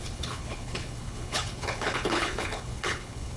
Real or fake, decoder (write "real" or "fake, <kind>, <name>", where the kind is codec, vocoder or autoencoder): fake, codec, HILCodec